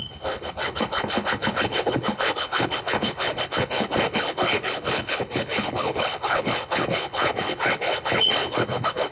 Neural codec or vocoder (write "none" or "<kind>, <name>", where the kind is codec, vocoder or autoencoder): codec, HILCodec